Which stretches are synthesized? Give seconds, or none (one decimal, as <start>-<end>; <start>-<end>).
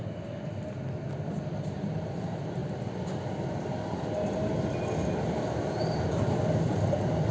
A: none